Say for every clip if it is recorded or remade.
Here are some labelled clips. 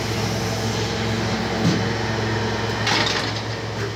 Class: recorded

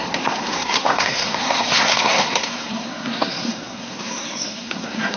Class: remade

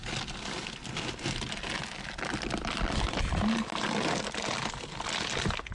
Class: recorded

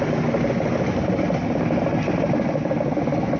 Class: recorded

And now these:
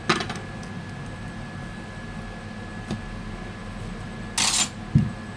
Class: recorded